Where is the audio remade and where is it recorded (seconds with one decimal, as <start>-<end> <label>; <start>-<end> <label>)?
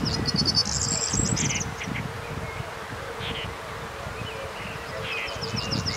0.0-6.0 recorded